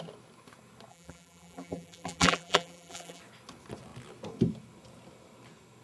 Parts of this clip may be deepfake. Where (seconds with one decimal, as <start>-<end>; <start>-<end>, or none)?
0.9-3.2